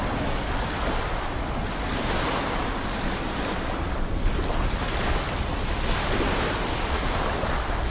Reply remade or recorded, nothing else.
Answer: recorded